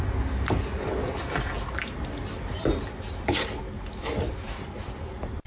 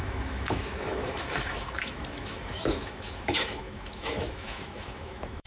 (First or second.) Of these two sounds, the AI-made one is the second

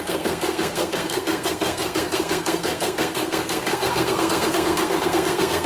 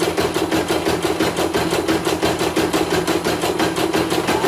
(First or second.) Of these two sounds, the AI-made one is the first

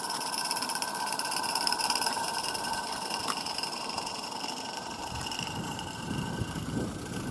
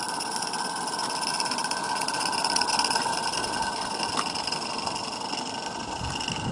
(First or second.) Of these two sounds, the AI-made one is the first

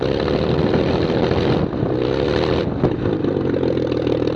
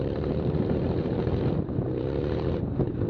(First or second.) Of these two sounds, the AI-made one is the second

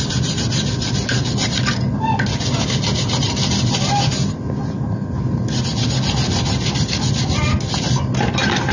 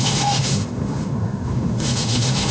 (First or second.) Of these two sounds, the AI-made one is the second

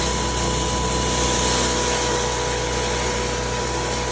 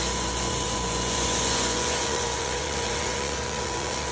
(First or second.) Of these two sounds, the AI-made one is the second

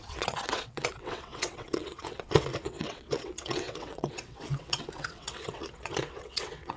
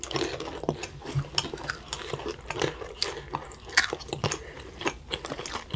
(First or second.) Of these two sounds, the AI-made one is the first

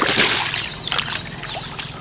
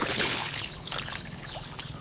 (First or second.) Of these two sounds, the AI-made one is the second